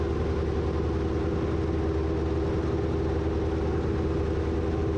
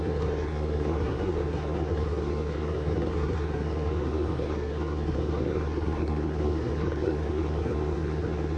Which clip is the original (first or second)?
first